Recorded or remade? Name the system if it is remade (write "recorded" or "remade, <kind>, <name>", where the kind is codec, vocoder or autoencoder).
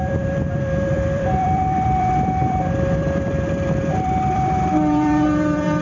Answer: remade, vocoder, BigVGAN v2